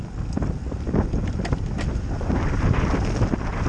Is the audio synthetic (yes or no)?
no